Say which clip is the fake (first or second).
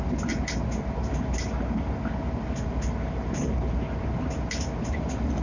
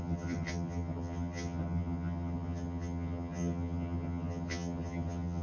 second